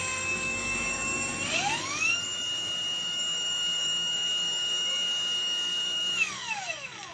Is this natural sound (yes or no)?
no